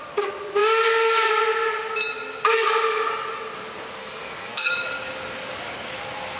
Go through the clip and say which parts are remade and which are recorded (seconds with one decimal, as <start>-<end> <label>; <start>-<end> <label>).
0.0-4.0 recorded; 4.0-4.7 remade; 4.7-6.4 recorded